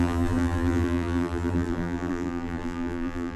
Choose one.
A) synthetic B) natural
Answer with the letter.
A